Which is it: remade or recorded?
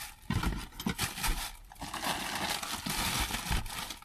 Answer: recorded